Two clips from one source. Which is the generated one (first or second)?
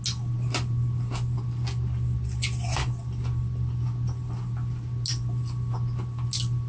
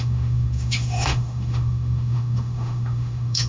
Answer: second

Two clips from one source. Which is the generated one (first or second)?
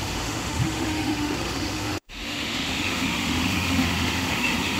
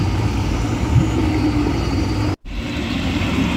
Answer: first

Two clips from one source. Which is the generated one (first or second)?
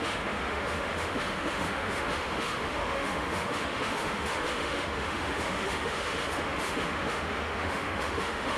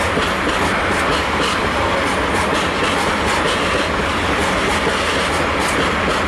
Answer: first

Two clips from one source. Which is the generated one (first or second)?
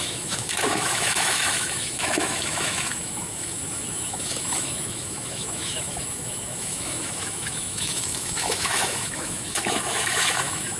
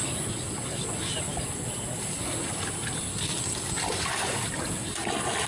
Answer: first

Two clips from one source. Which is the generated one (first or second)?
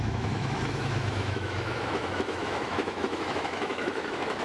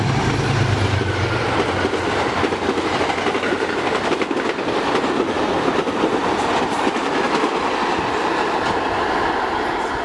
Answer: first